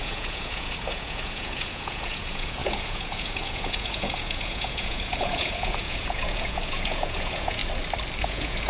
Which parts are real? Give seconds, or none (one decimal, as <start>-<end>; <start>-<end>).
7.6-8.2